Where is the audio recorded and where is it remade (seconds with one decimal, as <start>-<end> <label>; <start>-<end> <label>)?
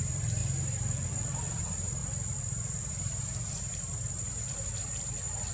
0.0-0.4 remade; 0.4-1.6 recorded; 1.6-2.0 remade; 2.0-2.9 recorded; 2.9-5.5 remade